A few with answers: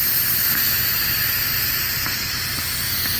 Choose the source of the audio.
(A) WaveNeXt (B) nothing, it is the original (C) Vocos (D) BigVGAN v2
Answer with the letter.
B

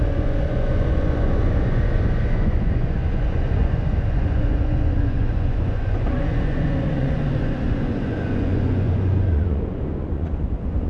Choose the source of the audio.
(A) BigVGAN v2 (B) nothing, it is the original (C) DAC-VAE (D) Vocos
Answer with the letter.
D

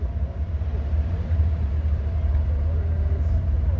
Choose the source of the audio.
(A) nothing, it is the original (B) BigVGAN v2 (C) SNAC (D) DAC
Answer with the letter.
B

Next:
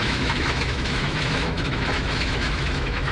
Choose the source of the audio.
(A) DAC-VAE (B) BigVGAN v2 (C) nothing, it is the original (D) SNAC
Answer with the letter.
A